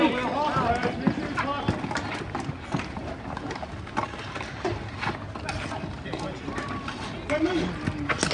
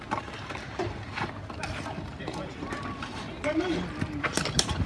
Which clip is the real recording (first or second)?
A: first